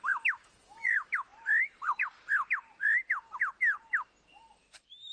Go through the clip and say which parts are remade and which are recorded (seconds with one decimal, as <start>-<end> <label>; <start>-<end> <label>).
0.0-1.3 remade; 1.3-4.4 recorded; 4.4-5.1 remade